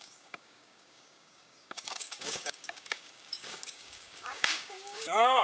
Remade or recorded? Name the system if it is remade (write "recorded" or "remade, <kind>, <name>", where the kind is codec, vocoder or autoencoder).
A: remade, codec, DAC